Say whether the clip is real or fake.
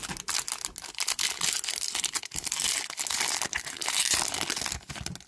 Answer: real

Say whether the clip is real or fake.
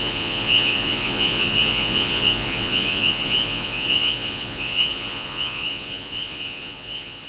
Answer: fake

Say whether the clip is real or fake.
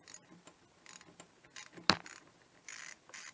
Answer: real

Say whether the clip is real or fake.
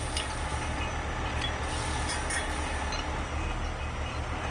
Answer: real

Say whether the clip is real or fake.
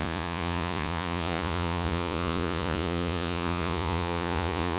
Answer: fake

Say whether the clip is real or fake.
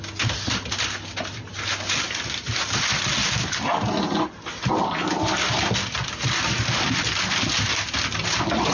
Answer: real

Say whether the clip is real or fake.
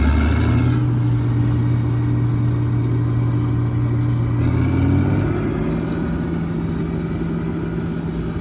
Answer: real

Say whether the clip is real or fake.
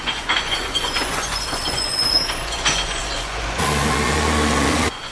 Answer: fake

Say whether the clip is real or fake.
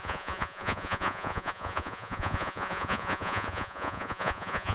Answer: fake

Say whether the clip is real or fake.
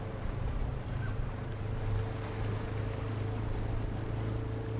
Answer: real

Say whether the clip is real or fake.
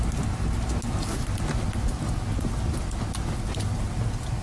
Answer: real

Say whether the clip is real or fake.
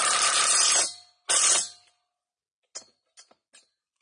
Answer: real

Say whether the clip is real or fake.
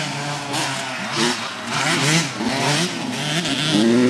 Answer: real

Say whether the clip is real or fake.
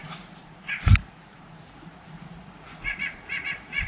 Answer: fake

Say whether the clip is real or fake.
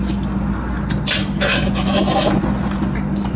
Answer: real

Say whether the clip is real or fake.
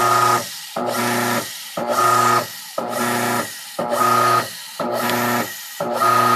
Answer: real